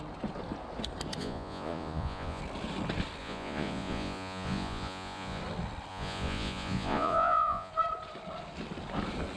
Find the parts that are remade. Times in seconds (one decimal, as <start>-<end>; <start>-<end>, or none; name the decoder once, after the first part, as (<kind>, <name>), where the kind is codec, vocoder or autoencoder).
1.2-2.4 (vocoder, Vocos); 3.2-5.4; 5.9-7.7